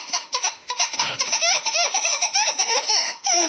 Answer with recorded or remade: remade